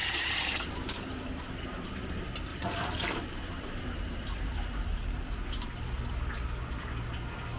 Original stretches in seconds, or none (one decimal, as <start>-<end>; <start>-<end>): 1.5-2.5; 6.0-7.6